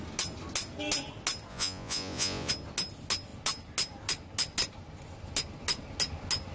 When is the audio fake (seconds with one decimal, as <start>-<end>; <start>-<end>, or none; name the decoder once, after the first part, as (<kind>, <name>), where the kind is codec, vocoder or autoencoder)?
1.5-2.5 (vocoder, Vocos)